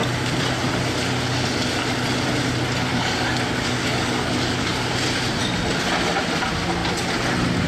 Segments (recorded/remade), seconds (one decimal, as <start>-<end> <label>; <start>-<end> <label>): 0.0-2.9 recorded; 2.9-4.9 remade; 4.9-7.7 recorded